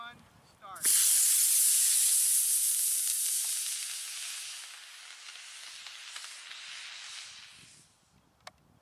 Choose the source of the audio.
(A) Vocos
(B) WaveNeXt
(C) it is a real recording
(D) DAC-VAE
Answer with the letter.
C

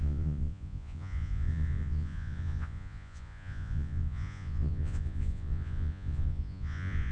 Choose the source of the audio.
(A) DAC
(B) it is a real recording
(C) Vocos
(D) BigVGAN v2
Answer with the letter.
C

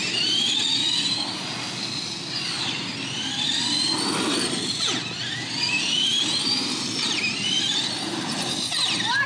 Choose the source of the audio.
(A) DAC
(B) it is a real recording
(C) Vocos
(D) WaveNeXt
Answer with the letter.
B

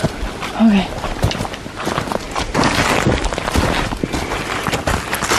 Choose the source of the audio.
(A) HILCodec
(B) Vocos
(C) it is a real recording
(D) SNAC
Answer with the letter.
C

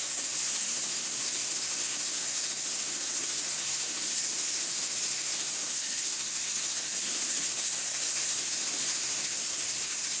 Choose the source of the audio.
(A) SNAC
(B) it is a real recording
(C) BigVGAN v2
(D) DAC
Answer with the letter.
A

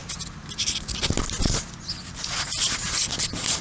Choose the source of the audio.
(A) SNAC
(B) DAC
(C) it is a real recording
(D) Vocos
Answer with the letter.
C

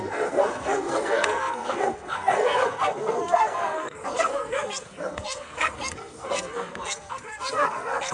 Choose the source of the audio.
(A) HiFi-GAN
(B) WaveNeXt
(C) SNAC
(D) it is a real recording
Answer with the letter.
C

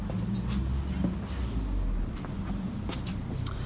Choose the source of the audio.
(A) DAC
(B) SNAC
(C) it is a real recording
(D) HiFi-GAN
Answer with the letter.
C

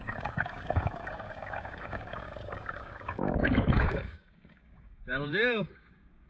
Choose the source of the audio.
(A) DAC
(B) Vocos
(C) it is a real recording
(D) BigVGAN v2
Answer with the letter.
A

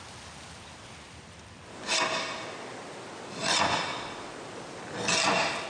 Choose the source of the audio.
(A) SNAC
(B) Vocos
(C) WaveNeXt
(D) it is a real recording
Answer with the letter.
D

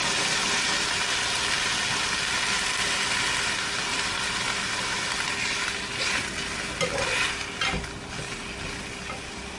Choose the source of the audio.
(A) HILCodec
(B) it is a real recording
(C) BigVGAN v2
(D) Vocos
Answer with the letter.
B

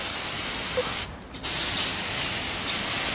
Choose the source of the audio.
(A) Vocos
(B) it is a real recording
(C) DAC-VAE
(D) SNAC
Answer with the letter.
B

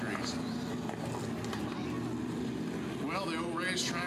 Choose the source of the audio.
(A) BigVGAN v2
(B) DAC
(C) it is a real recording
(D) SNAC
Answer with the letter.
C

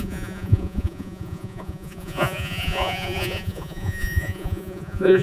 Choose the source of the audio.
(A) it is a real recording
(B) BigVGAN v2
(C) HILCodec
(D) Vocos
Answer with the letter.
D